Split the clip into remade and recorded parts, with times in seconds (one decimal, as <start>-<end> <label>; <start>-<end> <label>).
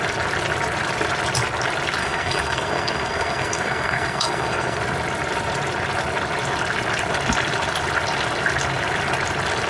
0.0-2.0 recorded; 2.0-4.8 remade; 4.8-9.7 recorded